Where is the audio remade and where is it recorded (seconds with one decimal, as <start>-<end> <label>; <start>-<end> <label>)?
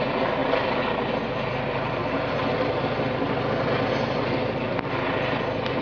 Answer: 0.0-5.8 recorded